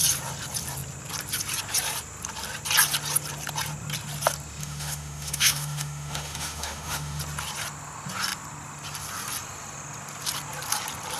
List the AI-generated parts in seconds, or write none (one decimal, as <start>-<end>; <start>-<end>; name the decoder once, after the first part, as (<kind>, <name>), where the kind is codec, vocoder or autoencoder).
4.6-7.2 (autoencoder, DAC-VAE)